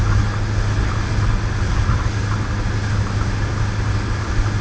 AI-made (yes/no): no